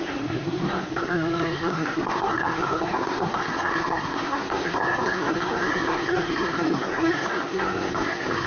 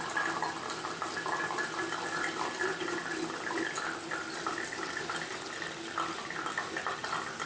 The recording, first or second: second